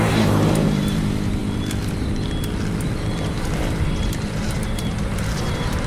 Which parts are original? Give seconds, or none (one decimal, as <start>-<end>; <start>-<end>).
1.4-3.3